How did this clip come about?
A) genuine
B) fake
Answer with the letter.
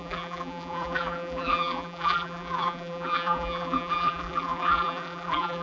B